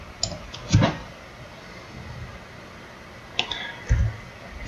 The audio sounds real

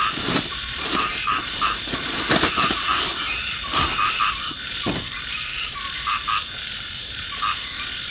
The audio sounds fake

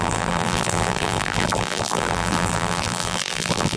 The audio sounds fake